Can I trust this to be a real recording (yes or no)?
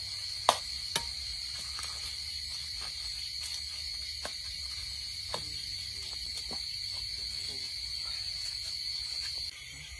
yes